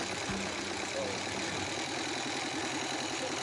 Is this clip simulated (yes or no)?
no